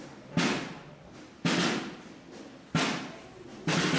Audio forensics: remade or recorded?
recorded